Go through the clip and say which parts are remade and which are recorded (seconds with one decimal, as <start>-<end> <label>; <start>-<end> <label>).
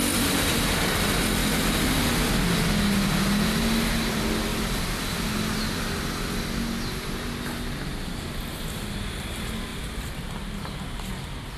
0.0-9.7 recorded; 9.7-11.1 remade; 11.1-11.6 recorded